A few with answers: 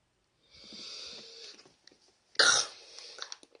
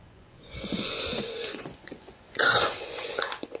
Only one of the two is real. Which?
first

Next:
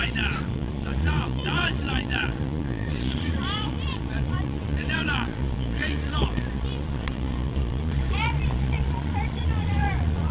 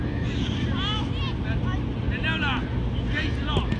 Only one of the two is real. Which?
second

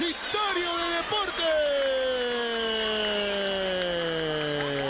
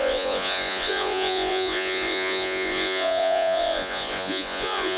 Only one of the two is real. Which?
first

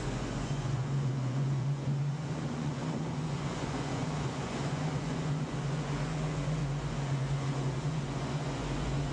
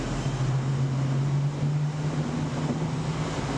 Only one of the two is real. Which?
second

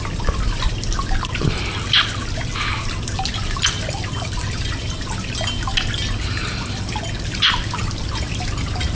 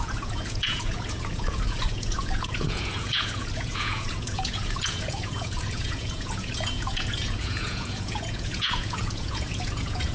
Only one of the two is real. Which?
first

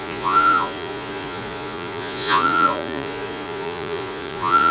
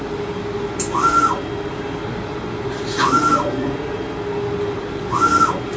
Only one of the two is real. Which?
second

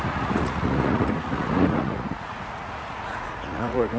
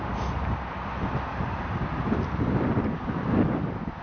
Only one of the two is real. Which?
second